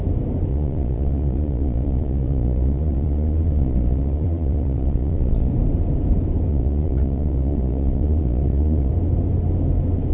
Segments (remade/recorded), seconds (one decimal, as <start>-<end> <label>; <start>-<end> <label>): 0.0-0.5 recorded; 0.5-5.5 remade; 5.5-6.5 recorded; 6.5-8.9 remade; 8.9-10.1 recorded